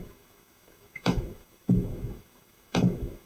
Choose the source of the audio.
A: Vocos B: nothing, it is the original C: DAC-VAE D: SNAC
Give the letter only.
C